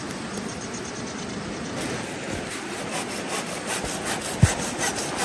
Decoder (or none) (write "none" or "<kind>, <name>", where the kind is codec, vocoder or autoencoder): vocoder, BigVGAN v2